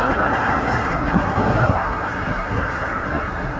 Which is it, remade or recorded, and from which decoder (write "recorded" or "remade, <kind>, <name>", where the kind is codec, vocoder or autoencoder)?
remade, codec, SNAC